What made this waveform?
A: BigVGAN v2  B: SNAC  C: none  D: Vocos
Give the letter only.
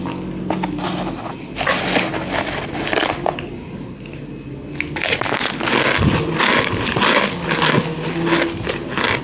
C